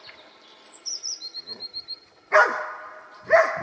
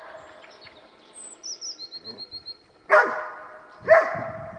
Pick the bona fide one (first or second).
second